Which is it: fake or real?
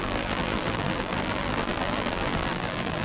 fake